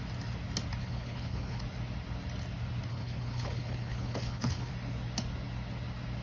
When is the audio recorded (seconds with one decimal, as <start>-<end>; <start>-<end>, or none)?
0.0-0.8; 1.6-2.9; 4.7-6.2